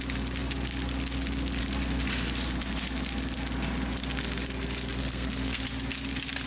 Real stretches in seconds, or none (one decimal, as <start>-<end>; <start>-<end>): 0.0-5.0; 5.6-6.5